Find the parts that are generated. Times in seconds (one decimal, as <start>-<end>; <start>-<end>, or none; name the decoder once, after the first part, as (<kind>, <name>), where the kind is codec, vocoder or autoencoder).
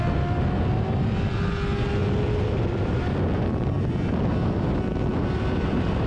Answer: none